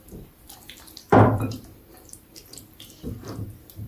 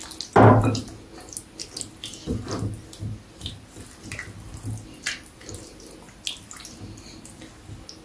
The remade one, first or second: first